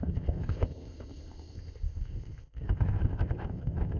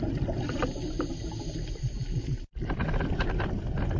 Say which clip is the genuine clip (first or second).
second